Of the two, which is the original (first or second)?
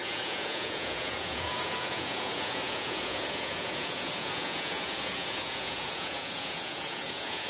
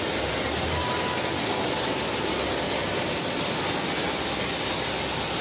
second